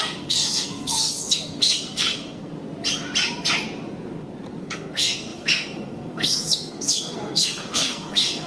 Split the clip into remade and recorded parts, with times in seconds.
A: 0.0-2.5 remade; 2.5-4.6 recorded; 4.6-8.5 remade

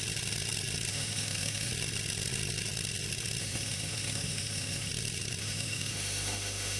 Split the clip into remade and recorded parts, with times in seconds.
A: 0.0-0.9 recorded; 0.9-1.7 remade; 1.7-3.4 recorded; 3.4-4.9 remade; 4.9-5.4 recorded; 5.4-6.8 remade